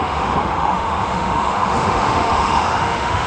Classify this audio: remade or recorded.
remade